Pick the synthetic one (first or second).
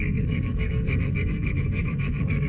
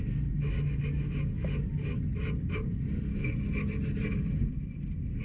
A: first